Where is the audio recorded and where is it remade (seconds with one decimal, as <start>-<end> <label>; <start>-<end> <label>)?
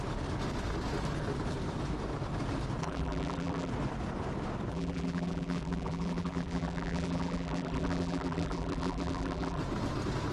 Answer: 0.0-2.8 recorded; 2.8-3.7 remade; 3.7-4.7 recorded; 4.7-9.6 remade; 9.6-10.3 recorded